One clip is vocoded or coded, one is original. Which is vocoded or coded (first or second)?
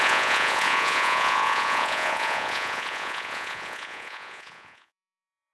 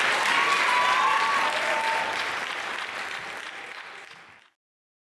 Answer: first